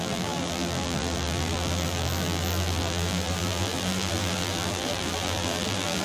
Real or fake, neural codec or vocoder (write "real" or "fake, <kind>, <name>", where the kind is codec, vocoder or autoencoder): fake, vocoder, BigVGAN v2